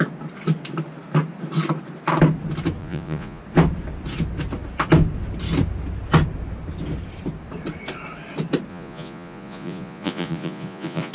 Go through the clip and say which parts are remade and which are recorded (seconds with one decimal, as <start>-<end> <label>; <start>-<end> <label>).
0.0-2.8 recorded; 2.8-3.4 remade; 3.4-8.7 recorded; 8.7-11.1 remade